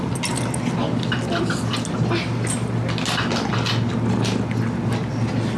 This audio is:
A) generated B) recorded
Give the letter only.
B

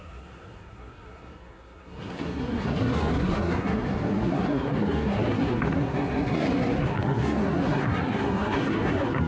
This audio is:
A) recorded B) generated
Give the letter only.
B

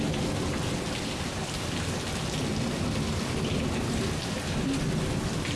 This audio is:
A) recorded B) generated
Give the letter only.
A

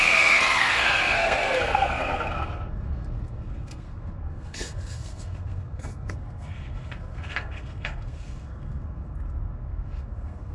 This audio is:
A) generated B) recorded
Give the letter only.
A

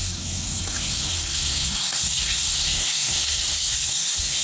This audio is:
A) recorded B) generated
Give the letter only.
B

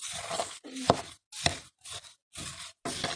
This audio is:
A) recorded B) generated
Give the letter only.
A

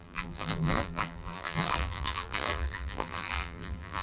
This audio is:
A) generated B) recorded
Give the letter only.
A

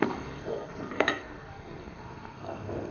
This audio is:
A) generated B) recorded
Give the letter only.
A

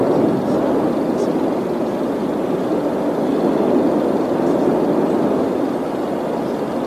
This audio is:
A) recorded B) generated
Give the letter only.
A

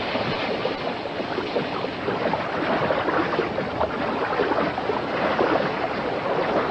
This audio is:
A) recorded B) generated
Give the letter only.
A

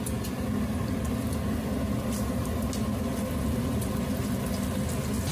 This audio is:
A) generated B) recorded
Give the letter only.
B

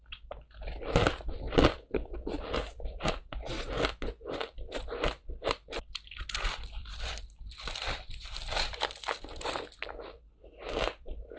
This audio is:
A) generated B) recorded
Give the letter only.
B